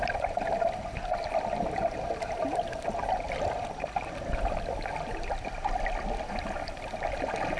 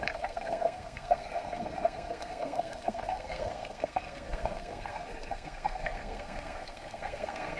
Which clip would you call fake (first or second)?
second